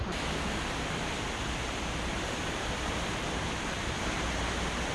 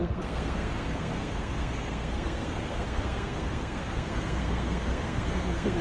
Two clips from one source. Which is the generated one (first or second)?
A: second